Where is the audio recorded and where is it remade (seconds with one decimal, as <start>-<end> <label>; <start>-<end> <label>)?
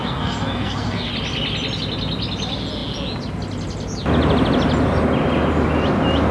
0.0-1.1 remade; 1.1-6.3 recorded